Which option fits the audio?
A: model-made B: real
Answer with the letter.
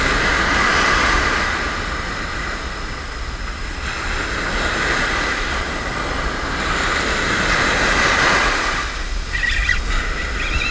B